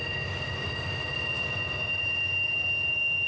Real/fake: real